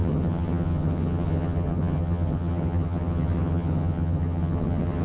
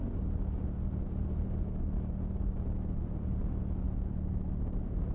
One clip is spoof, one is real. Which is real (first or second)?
second